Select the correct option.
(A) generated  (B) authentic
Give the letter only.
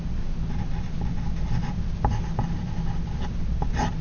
B